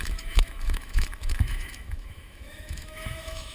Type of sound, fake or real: fake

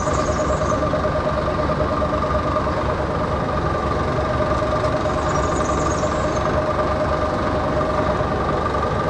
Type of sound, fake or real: real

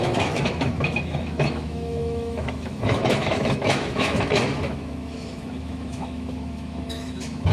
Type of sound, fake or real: fake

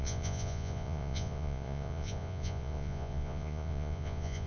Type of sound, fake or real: fake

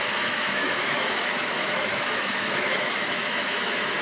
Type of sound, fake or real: fake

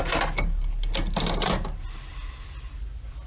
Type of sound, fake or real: real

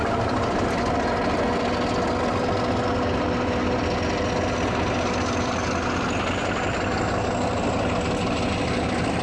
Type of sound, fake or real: real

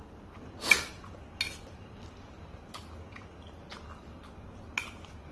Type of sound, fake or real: real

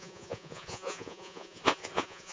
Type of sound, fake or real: fake